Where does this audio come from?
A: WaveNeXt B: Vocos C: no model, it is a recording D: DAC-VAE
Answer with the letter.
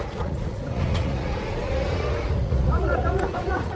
B